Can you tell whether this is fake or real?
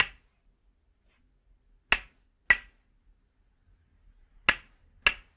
real